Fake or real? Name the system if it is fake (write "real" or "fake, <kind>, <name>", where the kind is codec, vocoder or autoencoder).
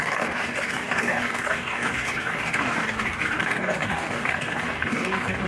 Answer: fake, codec, DAC